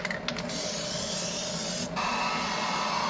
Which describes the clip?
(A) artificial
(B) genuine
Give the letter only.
B